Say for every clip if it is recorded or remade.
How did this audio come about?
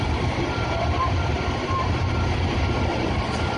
remade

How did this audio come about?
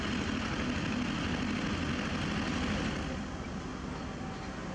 recorded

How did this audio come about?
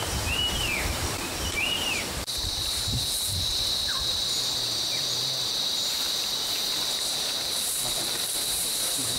remade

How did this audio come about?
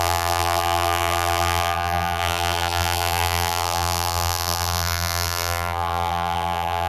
remade